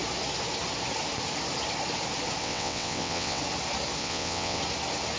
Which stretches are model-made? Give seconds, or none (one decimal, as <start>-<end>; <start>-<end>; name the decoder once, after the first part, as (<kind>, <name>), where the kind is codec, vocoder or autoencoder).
2.4-3.4 (vocoder, WaveNeXt); 4.0-4.6

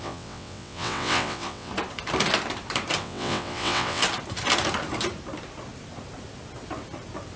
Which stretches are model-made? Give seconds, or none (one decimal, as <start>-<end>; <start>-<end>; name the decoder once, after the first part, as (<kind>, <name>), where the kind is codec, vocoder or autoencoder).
0.0-1.7 (vocoder, WaveNeXt); 3.0-4.0

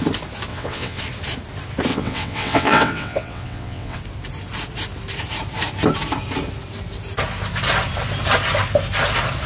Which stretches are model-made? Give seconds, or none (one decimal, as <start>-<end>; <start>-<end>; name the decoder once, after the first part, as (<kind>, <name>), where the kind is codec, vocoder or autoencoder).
0.5-1.0 (vocoder, WaveNeXt); 1.9-4.0

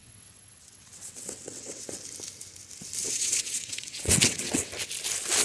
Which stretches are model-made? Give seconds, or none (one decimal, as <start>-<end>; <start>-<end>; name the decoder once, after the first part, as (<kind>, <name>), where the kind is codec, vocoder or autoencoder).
0.0-1.9 (vocoder, WaveNeXt); 3.0-4.7

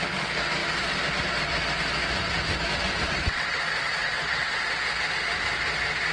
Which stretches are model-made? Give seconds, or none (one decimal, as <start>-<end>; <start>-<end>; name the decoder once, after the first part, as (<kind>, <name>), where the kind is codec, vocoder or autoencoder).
3.0-3.6 (vocoder, WaveNeXt); 4.0-4.6

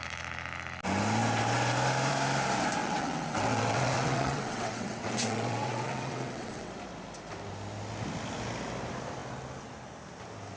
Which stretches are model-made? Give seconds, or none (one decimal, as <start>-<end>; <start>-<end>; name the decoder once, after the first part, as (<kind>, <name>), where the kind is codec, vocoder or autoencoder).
2.8-6.7 (vocoder, WaveNeXt)